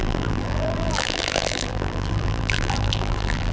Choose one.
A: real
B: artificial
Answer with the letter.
B